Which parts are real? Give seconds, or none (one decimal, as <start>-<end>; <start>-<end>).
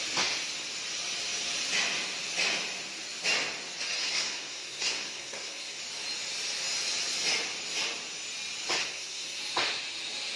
0.0-4.0; 5.8-8.8; 9.4-10.4